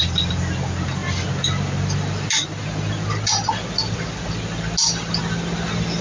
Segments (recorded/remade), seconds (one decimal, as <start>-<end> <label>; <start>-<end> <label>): 0.0-6.0 recorded